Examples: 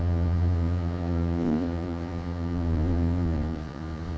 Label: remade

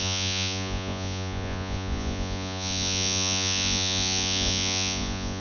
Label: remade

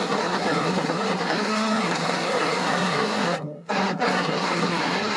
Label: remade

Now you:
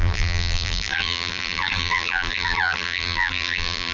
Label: remade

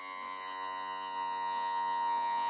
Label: remade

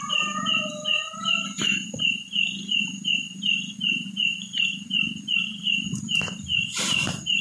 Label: remade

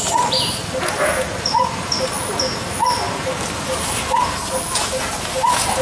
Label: recorded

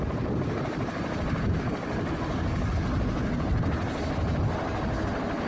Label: recorded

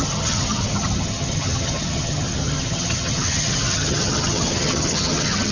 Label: remade